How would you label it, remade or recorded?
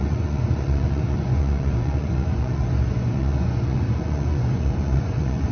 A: remade